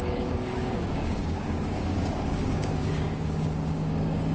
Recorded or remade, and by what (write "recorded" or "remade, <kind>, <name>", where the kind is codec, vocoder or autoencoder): remade, codec, DAC